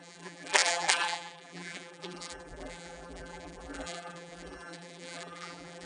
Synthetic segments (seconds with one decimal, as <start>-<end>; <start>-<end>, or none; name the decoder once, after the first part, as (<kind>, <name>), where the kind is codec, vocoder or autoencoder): 0.0-5.9 (vocoder, BigVGAN v2)